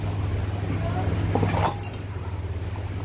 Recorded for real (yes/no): yes